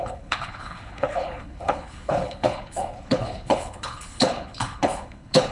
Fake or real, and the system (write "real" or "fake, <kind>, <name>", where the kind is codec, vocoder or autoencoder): fake, codec, HILCodec